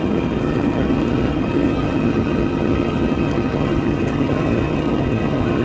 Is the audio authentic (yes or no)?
no